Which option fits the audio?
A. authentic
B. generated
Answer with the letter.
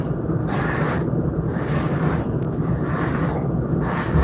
B